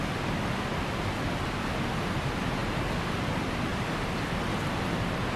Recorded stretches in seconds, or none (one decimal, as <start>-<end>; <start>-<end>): 0.0-5.4